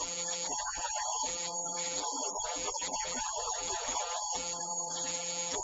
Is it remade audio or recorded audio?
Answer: remade